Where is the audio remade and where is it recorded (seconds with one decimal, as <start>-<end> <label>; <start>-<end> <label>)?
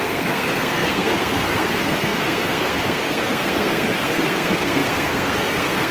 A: 0.0-5.9 remade